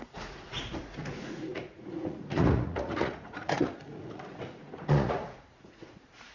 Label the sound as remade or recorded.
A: remade